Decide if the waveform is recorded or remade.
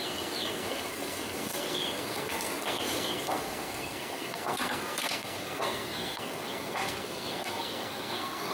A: remade